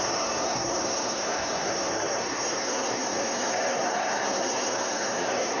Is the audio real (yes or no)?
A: no